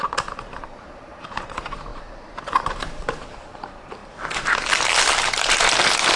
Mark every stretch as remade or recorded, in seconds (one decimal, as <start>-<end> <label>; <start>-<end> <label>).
0.0-4.0 remade; 4.0-5.1 recorded; 5.1-6.2 remade